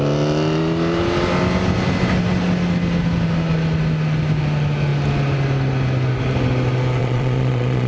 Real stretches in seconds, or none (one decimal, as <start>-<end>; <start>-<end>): 0.0-7.0